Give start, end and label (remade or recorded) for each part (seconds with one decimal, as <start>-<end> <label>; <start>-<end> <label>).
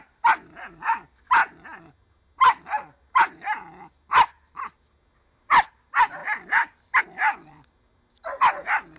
0.0-1.4 remade; 1.4-5.7 recorded; 5.7-9.0 remade